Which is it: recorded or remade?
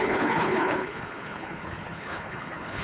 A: remade